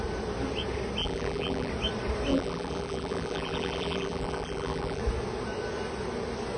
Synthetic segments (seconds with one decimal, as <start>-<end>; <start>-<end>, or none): 1.0-1.7; 2.3-5.0